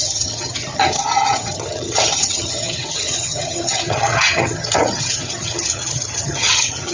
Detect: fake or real fake